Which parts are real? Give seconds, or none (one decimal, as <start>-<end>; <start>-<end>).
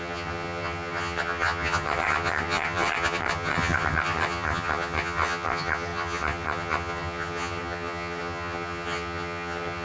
none